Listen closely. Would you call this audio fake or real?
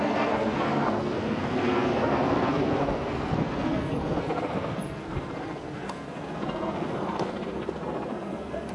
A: fake